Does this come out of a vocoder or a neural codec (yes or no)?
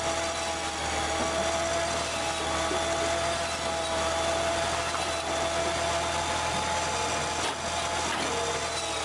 no